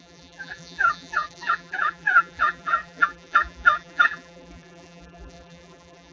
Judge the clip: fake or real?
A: fake